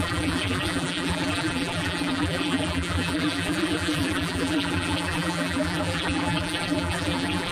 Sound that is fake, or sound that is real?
fake